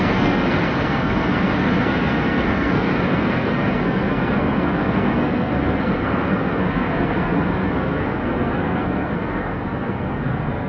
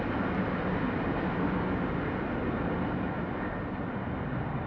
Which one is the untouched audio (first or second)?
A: second